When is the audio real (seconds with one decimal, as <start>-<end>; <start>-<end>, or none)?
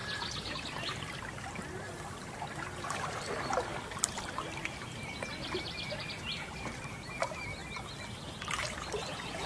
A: 0.0-3.1; 7.6-8.4